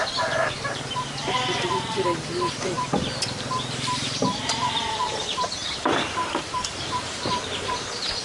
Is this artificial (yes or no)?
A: yes